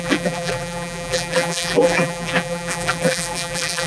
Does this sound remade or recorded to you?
remade